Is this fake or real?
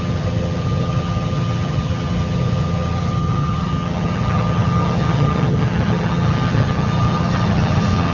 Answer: fake